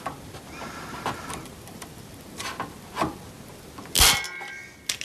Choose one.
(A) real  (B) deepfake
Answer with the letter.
A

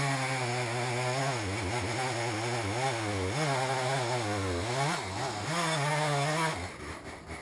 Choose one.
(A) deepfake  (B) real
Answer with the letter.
B